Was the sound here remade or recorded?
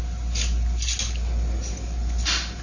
recorded